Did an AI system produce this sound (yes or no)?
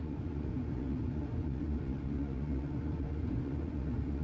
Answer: yes